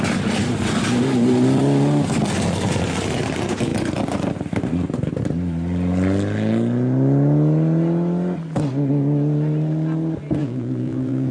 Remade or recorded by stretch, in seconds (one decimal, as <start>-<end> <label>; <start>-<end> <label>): 0.0-10.4 recorded; 10.4-11.3 remade